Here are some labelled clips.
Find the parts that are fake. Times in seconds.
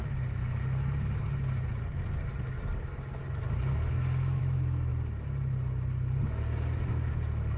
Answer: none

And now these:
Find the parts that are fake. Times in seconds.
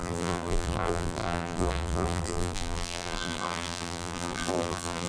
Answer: 0.0-5.1 (vocoder, BigVGAN v2)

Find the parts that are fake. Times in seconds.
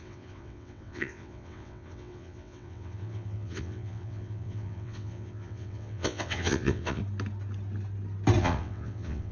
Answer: 0.0-7.0 (vocoder, WaveNeXt); 8.4-9.3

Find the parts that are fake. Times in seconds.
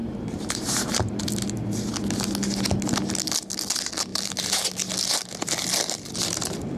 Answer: 0.0-1.2 (vocoder, BigVGAN v2); 4.1-4.7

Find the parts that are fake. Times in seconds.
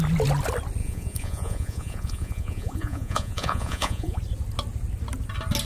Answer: 0.8-4.2 (vocoder, Vocos)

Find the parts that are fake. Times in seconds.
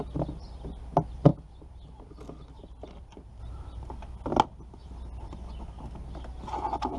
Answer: none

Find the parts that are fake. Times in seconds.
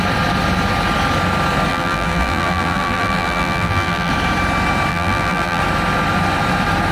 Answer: 1.7-4.1 (vocoder, BigVGAN v2); 4.9-5.6